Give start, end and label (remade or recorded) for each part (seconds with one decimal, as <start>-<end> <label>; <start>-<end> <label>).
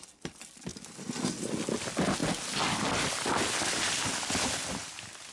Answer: 0.0-5.3 recorded